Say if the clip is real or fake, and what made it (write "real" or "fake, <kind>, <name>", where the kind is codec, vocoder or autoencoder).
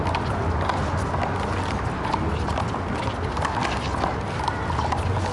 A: real